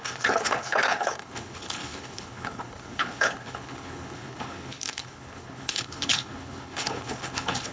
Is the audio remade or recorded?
remade